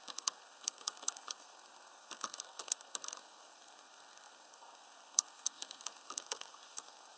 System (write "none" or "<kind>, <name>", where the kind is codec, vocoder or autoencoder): codec, SNAC